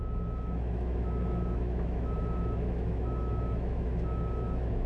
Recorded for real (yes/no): no